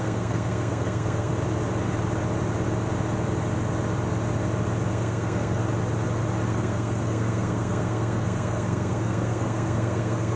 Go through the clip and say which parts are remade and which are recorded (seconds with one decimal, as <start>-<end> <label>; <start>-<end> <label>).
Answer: 0.0-1.3 remade; 1.3-4.9 recorded; 4.9-5.6 remade; 5.6-6.5 recorded; 6.5-10.4 remade